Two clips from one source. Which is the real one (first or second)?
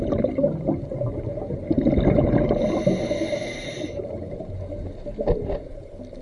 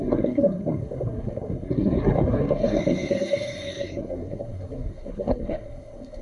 first